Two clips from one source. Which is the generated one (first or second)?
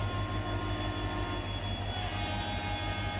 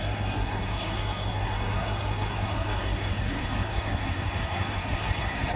second